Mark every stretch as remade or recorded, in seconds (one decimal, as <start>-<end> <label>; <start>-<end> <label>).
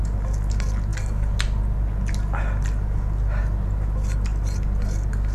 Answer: 0.0-5.3 recorded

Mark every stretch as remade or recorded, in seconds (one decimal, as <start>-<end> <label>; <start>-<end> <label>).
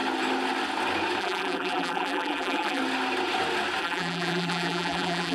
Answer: 0.0-1.2 recorded; 1.2-2.8 remade; 2.8-3.8 recorded; 3.8-5.3 remade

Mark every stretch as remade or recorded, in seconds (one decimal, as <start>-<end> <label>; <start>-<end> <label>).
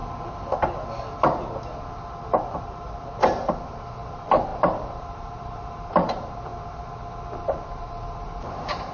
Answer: 0.0-2.6 recorded; 2.6-6.5 remade; 6.5-7.8 recorded; 7.8-8.9 remade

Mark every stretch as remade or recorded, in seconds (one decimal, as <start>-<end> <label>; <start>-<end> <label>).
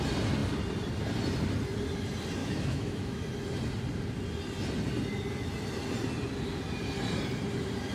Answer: 0.0-2.4 recorded; 2.4-3.2 remade; 3.2-7.9 recorded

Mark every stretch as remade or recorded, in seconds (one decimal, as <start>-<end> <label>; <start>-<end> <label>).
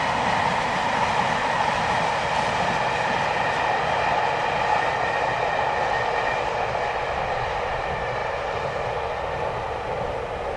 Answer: 0.0-10.6 recorded